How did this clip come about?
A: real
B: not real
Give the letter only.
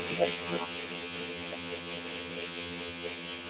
B